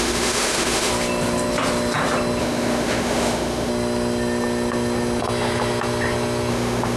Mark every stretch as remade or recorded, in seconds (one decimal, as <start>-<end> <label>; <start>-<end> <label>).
0.0-0.9 remade; 0.9-2.4 recorded; 2.4-3.7 remade; 3.7-6.5 recorded; 6.5-7.0 remade